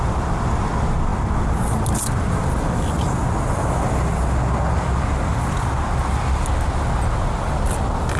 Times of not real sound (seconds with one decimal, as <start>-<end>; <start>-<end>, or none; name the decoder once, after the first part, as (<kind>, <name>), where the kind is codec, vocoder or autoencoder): none